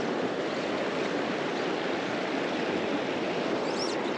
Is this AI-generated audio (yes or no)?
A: no